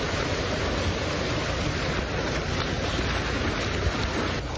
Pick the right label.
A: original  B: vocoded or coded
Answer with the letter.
A